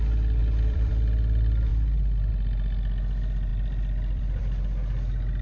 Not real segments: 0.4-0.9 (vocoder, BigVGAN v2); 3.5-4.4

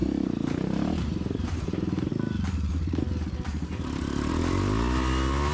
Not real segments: 0.0-2.1 (vocoder, BigVGAN v2); 3.5-4.3

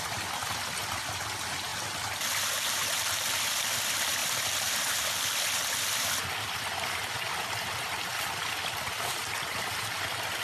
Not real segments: 0.0-1.7 (vocoder, BigVGAN v2); 2.5-10.4

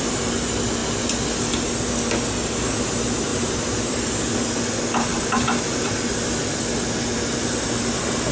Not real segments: 3.3-4.0 (vocoder, BigVGAN v2); 5.1-5.7